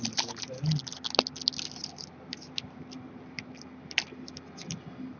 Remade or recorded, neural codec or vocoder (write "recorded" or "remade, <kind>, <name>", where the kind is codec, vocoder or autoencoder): recorded